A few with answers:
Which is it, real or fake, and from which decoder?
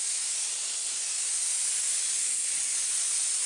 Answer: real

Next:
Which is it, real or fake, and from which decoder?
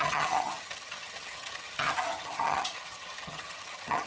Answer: fake, vocoder, HiFi-GAN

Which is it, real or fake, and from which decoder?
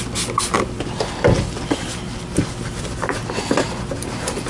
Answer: real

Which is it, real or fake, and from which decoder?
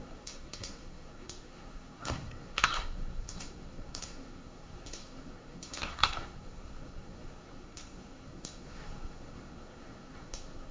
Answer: fake, codec, SNAC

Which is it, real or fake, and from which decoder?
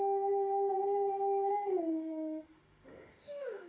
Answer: fake, autoencoder, DAC-VAE